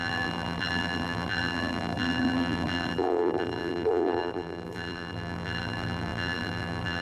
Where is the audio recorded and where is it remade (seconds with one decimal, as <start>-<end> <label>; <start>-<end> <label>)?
0.0-7.0 remade